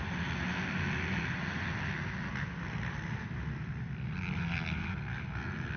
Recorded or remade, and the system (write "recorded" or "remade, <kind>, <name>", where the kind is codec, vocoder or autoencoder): recorded